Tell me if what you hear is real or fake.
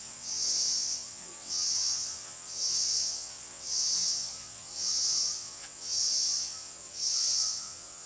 fake